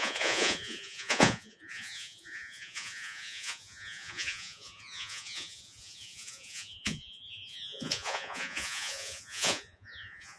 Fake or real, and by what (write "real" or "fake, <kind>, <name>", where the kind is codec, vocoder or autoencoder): fake, vocoder, Vocos